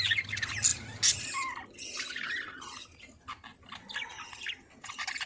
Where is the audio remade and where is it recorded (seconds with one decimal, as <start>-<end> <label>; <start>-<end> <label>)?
0.0-5.3 recorded